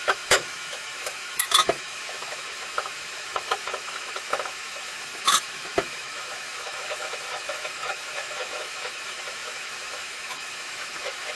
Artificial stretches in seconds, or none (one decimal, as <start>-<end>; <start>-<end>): 0.0-11.3